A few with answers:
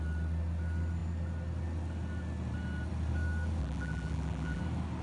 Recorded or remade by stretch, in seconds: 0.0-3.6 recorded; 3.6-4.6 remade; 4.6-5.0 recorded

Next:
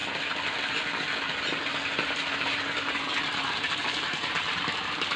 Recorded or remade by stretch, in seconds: 0.0-2.1 recorded; 2.1-5.2 remade